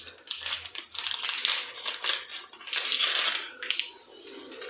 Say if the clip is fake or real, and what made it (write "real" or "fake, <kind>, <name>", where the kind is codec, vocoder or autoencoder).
real